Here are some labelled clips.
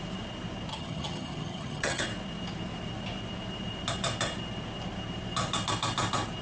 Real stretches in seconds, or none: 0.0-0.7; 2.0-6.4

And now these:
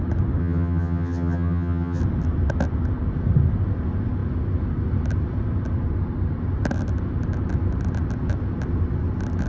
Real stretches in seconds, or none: 0.0-0.4; 2.0-9.5

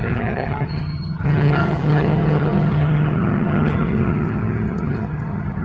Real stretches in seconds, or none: none